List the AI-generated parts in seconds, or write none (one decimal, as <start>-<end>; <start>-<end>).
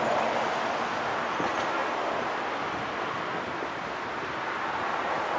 none